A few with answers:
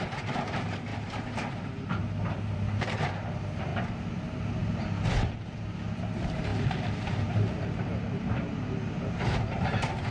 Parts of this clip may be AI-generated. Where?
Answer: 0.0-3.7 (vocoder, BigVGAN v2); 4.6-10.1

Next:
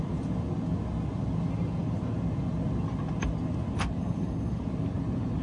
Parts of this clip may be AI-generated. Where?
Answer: 4.0-4.6 (codec, HILCodec)

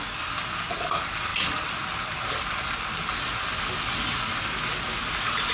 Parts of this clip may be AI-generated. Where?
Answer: none

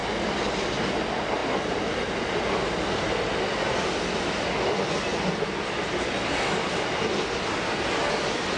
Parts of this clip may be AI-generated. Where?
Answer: none

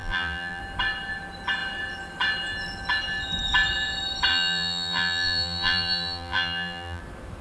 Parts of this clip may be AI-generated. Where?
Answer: 0.0-0.6 (vocoder, BigVGAN v2); 4.3-7.0

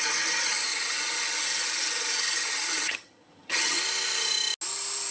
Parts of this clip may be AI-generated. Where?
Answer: 0.7-3.8 (vocoder, HiFi-GAN)

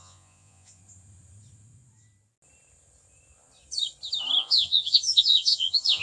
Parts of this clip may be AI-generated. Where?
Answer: 0.0-0.8 (vocoder, Vocos); 4.4-6.0